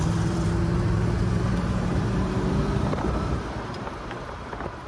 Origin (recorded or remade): remade